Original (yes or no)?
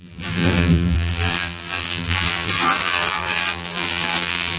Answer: no